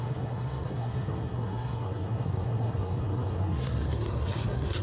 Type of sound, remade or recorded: remade